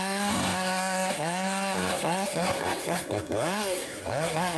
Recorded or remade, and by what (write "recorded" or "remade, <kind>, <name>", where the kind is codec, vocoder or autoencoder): remade, codec, SNAC